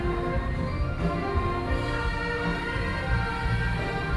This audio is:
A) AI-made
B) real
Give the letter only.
B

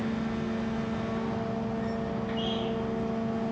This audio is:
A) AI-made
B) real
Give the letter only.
B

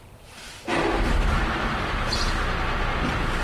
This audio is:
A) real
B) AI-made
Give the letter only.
B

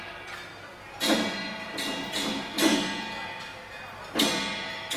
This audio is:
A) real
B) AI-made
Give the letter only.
A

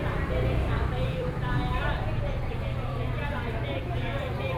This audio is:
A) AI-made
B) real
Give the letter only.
A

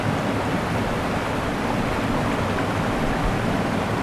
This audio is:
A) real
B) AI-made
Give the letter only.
A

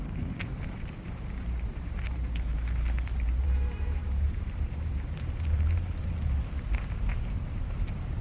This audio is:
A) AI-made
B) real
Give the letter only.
A